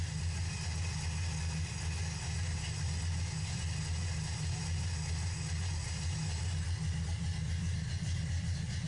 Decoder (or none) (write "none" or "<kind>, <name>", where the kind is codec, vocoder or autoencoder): none